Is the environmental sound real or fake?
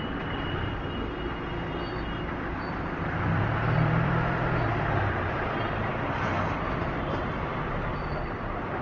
fake